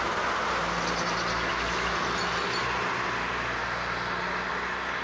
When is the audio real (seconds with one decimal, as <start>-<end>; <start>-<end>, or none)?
0.0-5.0

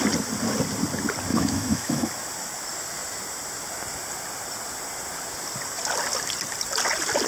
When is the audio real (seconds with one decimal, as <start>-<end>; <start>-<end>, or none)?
0.0-1.3; 2.1-7.3

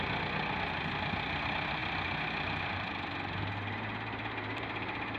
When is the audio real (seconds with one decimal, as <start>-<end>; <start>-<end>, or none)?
0.0-5.2

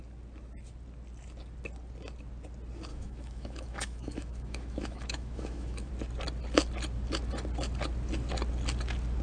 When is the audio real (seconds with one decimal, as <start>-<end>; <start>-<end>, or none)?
0.0-2.9; 5.9-9.2

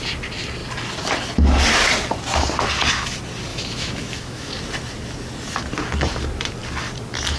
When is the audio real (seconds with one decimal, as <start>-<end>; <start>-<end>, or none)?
0.0-3.5; 4.5-7.4

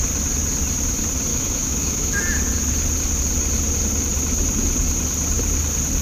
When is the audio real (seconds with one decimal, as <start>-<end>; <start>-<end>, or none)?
0.0-1.3; 2.2-6.0